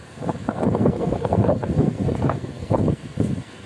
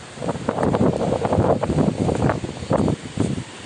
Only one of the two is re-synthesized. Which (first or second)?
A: first